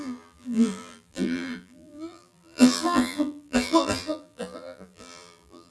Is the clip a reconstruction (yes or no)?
yes